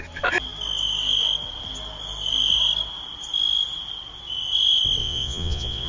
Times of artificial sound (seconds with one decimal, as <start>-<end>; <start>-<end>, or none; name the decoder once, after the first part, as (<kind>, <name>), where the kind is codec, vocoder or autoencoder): 5.0-5.9 (vocoder, Vocos)